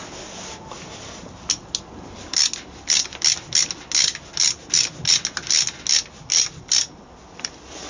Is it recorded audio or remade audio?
recorded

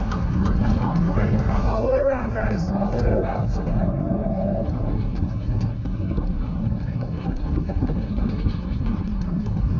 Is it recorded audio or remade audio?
remade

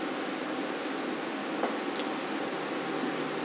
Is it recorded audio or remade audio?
recorded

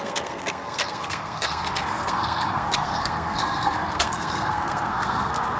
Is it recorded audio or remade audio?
remade